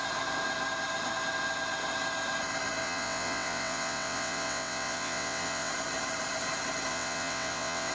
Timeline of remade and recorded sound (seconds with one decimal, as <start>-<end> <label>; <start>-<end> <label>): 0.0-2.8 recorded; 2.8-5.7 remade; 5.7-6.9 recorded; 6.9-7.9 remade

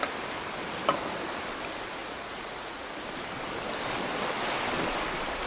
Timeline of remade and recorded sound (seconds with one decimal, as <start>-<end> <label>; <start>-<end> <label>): 0.0-2.0 recorded; 2.0-2.9 remade; 2.9-5.5 recorded

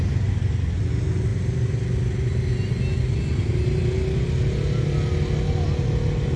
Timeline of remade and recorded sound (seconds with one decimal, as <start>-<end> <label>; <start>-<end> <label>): 0.0-6.4 recorded

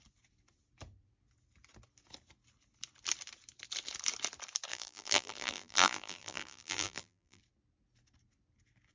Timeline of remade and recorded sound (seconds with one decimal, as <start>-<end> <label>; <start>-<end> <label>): 0.0-4.7 recorded; 4.7-7.4 remade; 7.4-8.9 recorded